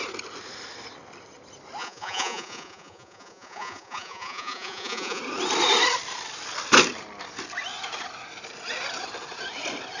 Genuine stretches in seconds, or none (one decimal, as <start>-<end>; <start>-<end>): 0.0-1.8; 5.2-10.0